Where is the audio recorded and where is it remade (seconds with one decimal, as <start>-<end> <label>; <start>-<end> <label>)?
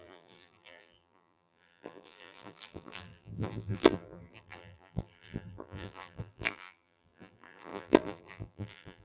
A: 0.0-9.0 remade